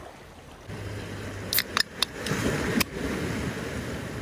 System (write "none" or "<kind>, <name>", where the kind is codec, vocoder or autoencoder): none